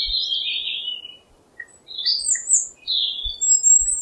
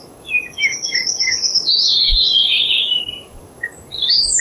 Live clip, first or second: first